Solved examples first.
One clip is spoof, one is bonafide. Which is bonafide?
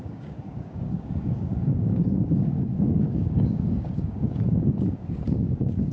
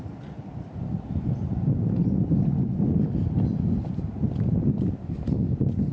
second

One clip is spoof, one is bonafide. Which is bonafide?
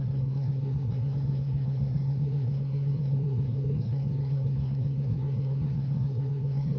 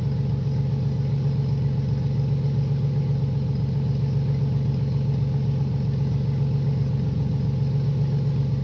second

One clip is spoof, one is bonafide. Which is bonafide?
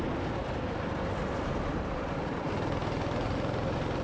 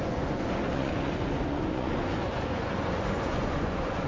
first